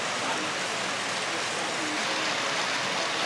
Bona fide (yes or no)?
yes